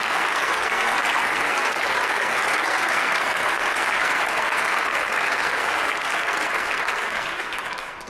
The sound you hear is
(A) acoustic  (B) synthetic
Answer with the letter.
B